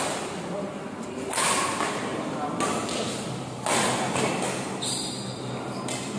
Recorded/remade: recorded